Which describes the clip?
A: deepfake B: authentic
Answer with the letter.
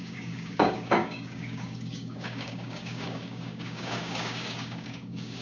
A